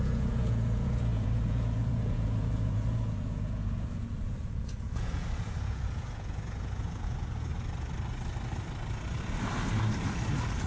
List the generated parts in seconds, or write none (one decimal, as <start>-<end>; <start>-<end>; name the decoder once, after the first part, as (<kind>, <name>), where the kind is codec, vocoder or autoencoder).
0.0-7.5 (vocoder, Vocos)